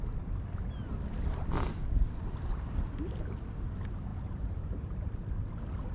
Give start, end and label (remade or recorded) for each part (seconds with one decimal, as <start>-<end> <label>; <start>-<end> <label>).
0.0-5.9 recorded